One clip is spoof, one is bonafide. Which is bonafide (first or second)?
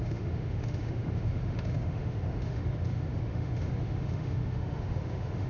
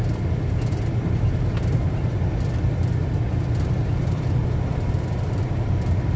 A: second